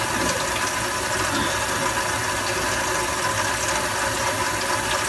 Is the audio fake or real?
real